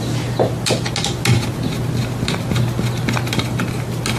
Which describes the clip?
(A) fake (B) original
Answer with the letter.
B